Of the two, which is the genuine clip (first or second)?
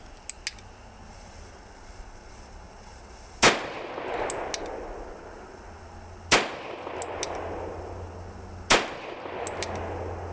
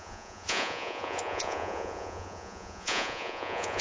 first